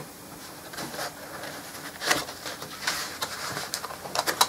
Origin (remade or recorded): remade